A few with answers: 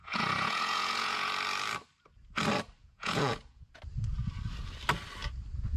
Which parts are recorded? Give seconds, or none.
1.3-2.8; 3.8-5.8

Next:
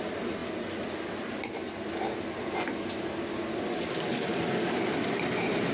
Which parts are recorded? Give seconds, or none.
0.0-5.7

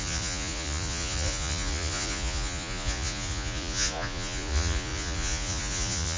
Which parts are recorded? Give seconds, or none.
none

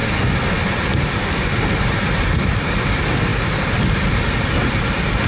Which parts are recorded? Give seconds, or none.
0.0-5.3